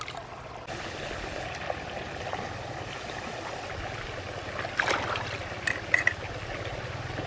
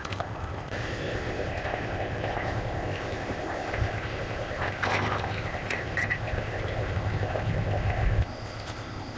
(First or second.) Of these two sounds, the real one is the first